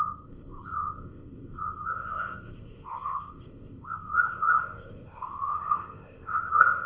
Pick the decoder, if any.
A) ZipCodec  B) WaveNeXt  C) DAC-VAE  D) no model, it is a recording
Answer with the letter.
A